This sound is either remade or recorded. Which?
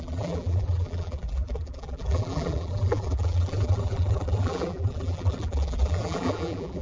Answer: remade